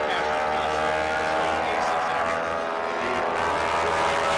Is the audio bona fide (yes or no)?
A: yes